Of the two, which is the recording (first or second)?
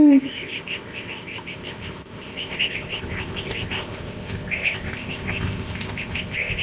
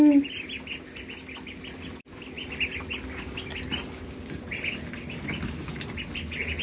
second